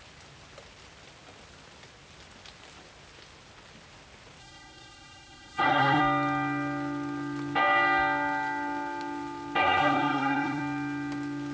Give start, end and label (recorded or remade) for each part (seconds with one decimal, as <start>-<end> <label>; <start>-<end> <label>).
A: 0.0-4.4 recorded; 4.4-6.0 remade; 6.0-9.6 recorded; 9.6-10.6 remade; 10.6-11.5 recorded